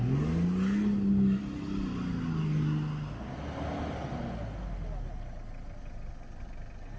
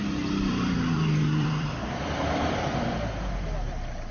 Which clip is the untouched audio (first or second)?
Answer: first